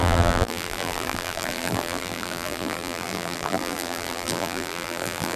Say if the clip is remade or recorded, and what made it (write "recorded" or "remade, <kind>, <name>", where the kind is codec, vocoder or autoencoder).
remade, vocoder, BigVGAN v2